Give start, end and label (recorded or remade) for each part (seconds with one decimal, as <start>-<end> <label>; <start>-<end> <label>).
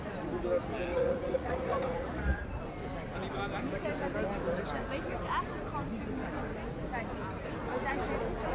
0.0-0.9 recorded; 0.9-2.6 remade; 2.6-8.5 recorded